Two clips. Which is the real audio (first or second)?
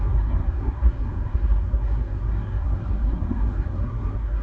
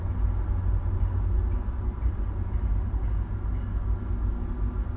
second